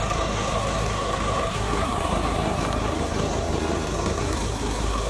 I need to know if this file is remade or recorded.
remade